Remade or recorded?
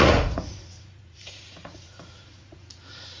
remade